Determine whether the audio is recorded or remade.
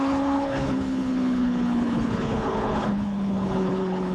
remade